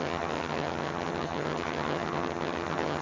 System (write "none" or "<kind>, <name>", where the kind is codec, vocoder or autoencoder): vocoder, HiFi-GAN